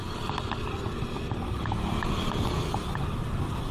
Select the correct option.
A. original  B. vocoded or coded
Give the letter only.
A